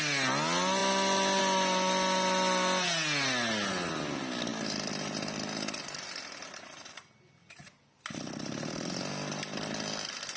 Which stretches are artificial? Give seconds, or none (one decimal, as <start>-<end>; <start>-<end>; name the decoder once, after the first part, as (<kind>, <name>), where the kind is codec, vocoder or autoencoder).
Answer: none